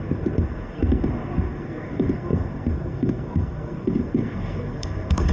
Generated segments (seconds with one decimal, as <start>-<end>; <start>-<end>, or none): 0.0-5.3